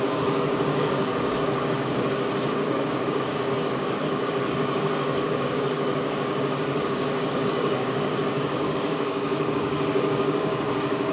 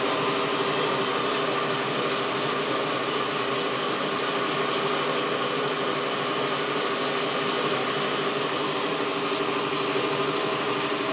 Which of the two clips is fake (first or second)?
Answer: first